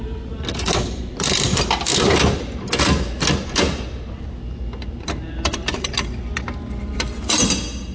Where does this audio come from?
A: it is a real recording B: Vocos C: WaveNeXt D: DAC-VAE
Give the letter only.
A